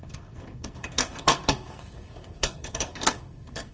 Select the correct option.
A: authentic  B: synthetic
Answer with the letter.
B